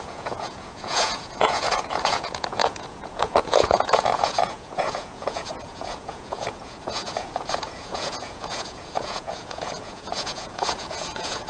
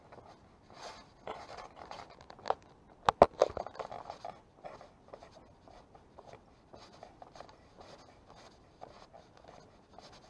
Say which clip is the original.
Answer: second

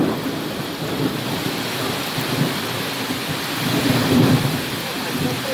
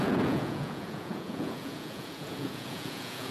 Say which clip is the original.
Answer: first